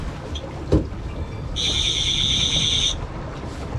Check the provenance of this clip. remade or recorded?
recorded